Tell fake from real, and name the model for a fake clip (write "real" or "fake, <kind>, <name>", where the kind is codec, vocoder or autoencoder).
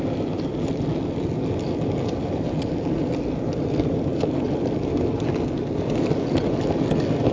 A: real